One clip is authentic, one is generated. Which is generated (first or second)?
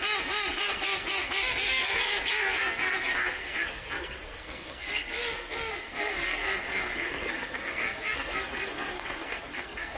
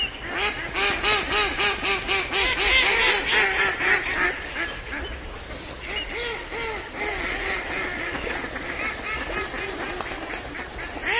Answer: first